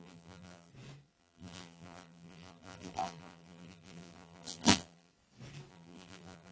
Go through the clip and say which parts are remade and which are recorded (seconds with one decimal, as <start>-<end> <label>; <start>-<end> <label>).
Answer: 0.0-0.7 remade; 0.7-1.2 recorded; 1.2-5.1 remade; 5.1-5.7 recorded; 5.7-6.5 remade